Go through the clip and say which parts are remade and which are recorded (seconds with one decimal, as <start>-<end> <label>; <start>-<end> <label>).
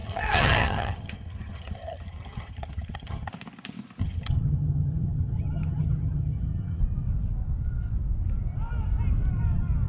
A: 0.0-3.3 remade; 3.3-4.0 recorded; 4.0-6.8 remade; 6.8-9.9 recorded